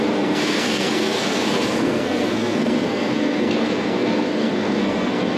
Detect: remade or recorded remade